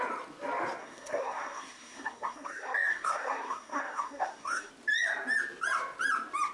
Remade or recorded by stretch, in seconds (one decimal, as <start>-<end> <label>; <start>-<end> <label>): 0.0-0.8 recorded; 0.8-4.7 remade; 4.7-6.5 recorded